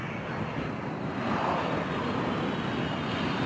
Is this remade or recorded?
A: recorded